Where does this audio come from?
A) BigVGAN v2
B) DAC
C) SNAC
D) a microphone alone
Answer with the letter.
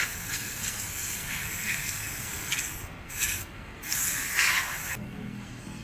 C